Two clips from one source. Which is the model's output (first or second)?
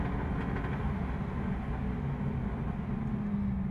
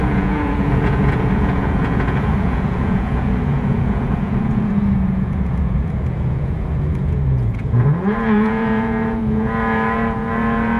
second